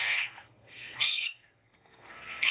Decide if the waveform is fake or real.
fake